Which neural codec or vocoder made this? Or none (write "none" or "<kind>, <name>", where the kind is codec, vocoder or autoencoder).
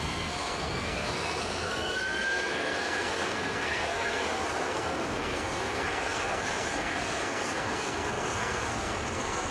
codec, SNAC